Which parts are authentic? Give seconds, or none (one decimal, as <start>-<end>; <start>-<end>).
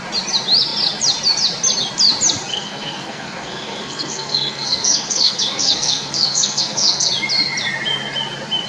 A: 0.0-2.5; 7.1-8.7